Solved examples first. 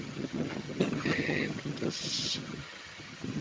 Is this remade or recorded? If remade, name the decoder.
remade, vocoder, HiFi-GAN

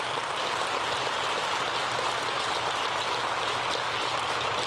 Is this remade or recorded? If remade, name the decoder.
recorded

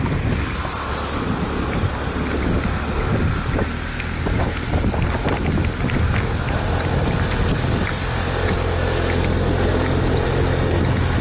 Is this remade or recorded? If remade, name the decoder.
recorded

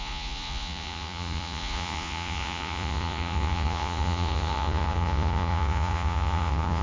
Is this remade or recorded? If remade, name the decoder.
remade, vocoder, Vocos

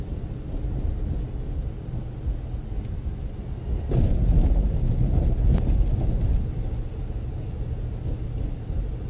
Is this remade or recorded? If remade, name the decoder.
recorded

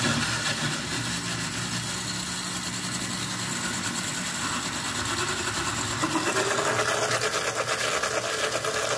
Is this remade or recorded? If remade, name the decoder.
recorded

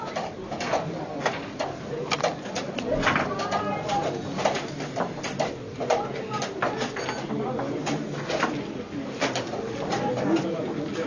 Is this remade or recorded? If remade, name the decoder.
recorded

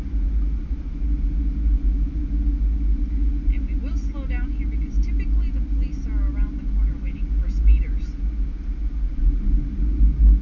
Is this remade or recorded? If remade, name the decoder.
recorded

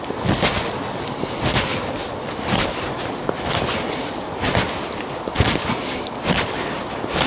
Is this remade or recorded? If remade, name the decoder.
remade, vocoder, BigVGAN v2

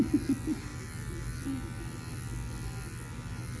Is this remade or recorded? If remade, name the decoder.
recorded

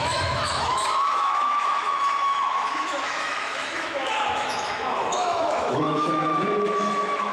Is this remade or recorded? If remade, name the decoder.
remade, autoencoder, DAC-VAE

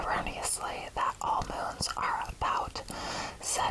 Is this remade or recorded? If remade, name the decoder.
recorded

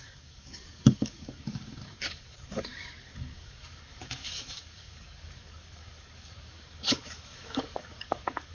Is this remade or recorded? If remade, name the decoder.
remade, codec, DAC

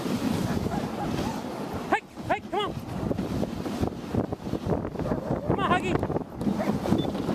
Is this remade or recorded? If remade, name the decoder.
recorded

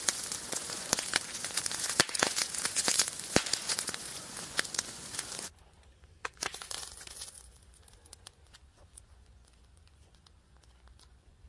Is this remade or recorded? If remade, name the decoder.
remade, vocoder, Vocos